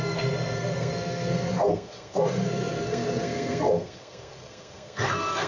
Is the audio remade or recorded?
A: remade